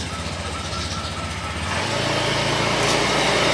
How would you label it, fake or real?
real